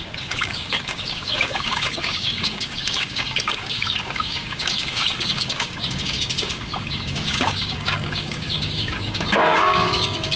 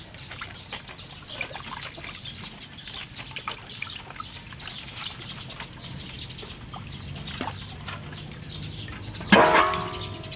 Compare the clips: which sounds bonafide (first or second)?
second